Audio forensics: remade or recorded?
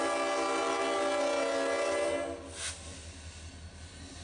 recorded